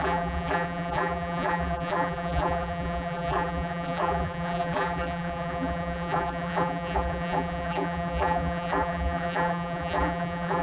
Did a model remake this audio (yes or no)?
yes